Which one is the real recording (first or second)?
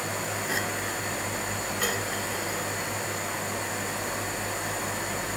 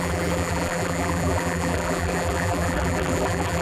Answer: first